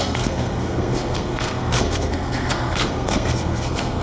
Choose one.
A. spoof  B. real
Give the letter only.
A